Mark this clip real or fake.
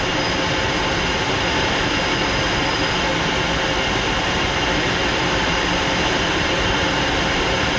real